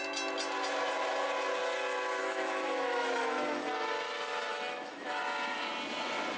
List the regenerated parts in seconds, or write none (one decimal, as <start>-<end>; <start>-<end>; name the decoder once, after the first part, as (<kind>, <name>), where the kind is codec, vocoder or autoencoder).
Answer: 2.2-3.7 (autoencoder, DAC-VAE); 4.5-5.2